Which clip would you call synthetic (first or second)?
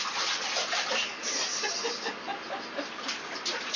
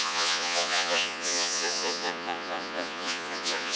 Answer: second